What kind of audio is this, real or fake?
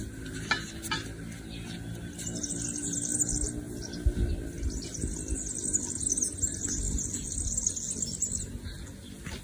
real